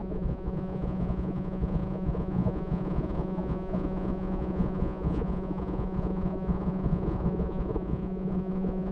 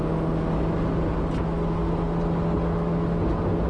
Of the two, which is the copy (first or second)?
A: first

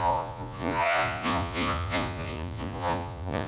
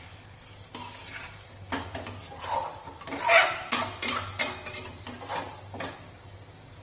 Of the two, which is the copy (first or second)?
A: first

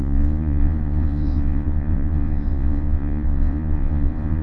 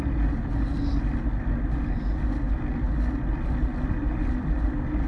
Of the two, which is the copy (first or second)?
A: first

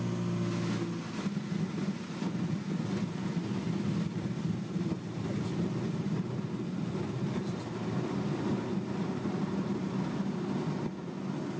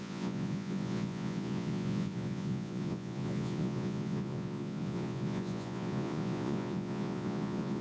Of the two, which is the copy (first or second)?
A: second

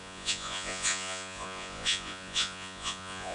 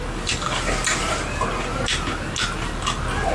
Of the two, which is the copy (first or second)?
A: first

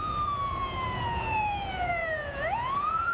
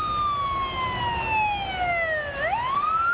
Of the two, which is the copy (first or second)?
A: first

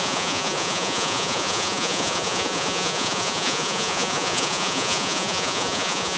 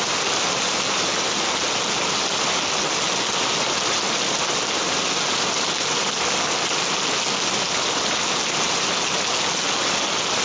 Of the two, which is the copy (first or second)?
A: first